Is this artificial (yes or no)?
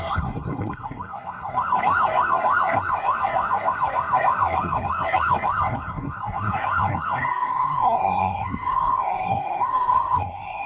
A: yes